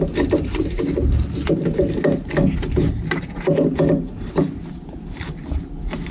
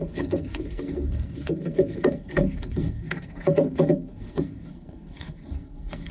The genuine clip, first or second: first